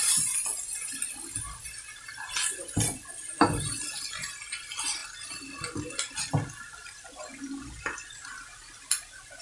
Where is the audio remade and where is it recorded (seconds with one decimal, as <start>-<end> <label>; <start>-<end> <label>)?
0.0-9.4 recorded

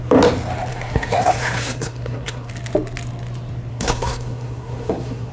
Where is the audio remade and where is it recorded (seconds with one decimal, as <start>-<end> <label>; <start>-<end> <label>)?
0.0-0.7 recorded; 0.7-2.5 remade; 2.5-3.7 recorded; 3.7-5.3 remade

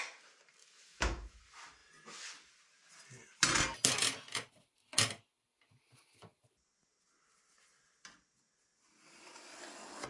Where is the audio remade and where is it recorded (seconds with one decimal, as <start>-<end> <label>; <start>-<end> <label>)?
0.0-0.6 recorded; 0.6-1.4 remade; 1.4-10.1 recorded

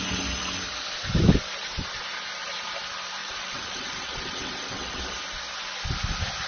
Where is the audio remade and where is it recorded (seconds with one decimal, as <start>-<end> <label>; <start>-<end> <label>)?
0.0-3.2 recorded; 3.2-5.0 remade; 5.0-6.5 recorded

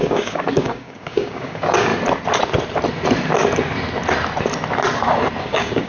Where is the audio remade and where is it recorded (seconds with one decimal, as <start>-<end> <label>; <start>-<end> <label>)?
0.0-1.9 remade; 1.9-5.4 recorded; 5.4-5.9 remade

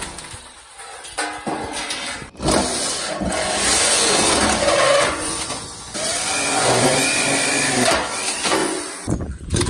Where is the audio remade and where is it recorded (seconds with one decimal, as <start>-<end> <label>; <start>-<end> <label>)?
0.0-2.7 recorded; 2.7-7.2 remade; 7.2-8.6 recorded; 8.6-9.7 remade

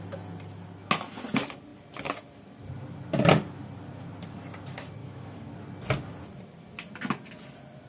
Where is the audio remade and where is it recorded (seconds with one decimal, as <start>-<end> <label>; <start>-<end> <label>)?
0.0-5.0 recorded; 5.0-5.5 remade; 5.5-7.9 recorded